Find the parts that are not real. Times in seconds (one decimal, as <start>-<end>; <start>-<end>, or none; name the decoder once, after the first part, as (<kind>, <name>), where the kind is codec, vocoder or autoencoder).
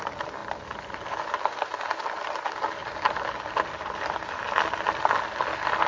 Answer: none